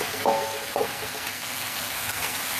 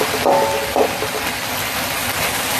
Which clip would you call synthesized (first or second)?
first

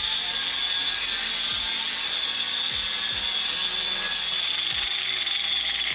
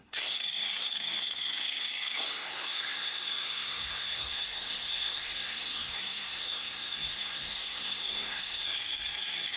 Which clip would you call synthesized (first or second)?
second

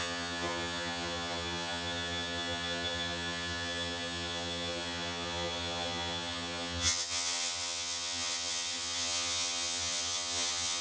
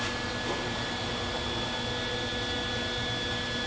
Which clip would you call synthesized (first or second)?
first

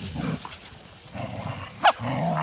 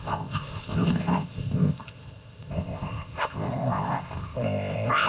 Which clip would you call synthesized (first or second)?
second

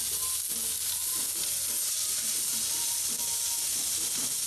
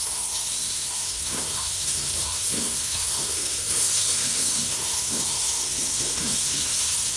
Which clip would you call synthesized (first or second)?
second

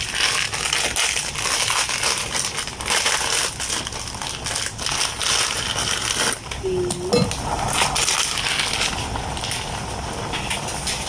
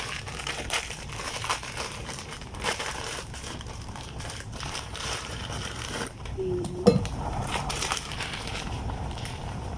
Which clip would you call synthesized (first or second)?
second